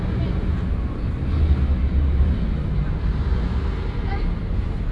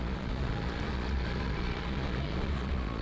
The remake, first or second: second